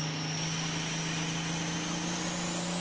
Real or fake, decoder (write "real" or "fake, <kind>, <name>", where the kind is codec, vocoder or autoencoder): real